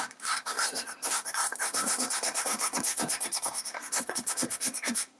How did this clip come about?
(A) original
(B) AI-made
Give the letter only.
B